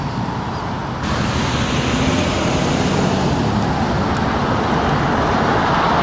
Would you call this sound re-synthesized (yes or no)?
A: no